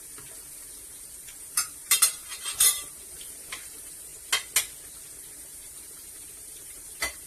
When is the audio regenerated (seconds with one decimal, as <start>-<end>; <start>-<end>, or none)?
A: 0.0-4.1; 5.2-7.3